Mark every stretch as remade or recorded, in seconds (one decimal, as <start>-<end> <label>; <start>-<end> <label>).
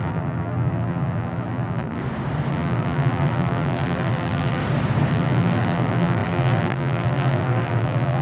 0.0-2.0 remade; 2.0-2.5 recorded; 2.5-4.6 remade; 4.6-5.1 recorded; 5.1-8.2 remade